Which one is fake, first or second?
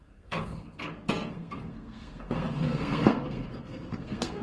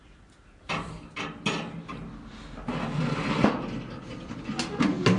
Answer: first